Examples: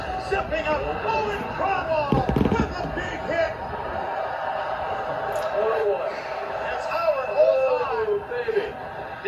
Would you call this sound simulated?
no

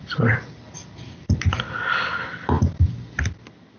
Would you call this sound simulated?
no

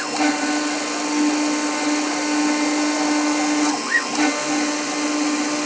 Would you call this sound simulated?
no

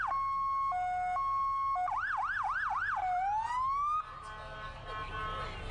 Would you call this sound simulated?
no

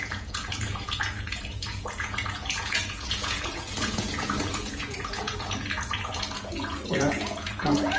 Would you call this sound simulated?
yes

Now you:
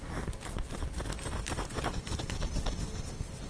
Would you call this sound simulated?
no